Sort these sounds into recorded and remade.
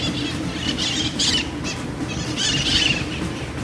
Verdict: recorded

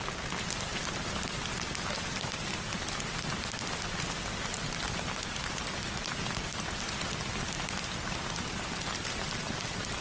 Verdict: recorded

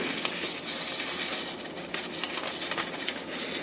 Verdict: recorded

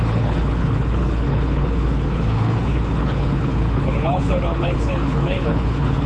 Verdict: remade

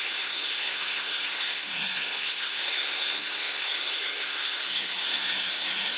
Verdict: remade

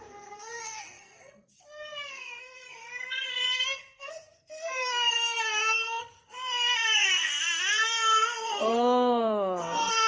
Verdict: remade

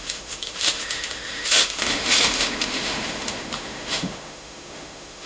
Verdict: remade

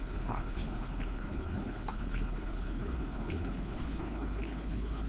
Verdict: remade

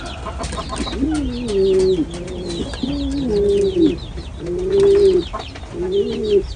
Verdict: recorded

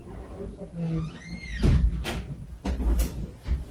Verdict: recorded